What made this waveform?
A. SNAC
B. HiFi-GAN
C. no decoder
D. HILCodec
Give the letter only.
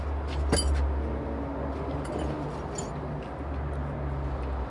C